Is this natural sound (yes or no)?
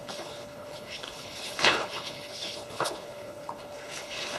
no